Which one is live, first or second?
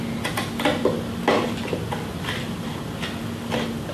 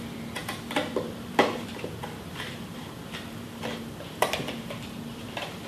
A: first